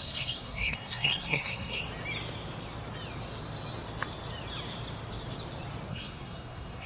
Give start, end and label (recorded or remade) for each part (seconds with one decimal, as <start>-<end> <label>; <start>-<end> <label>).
0.0-1.8 remade; 1.8-5.9 recorded; 5.9-6.9 remade